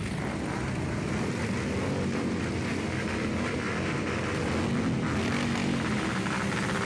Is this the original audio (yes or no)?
yes